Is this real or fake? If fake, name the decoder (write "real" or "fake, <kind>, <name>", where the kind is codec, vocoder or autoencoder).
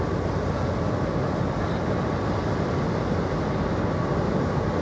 real